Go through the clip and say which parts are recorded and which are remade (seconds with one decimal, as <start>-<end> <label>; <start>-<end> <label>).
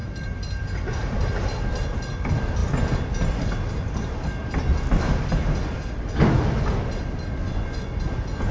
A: 0.0-7.4 recorded; 7.4-8.0 remade; 8.0-8.5 recorded